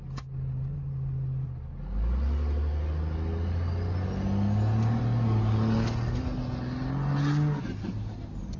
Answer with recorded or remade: recorded